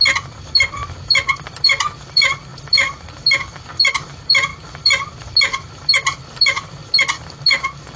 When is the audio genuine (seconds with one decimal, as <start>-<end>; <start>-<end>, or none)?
0.0-8.0